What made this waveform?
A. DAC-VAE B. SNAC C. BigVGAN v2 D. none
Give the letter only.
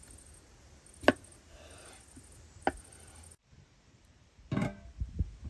D